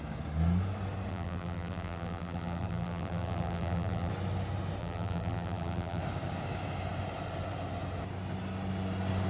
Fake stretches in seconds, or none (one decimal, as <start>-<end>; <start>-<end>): 1.1-4.1; 4.8-6.0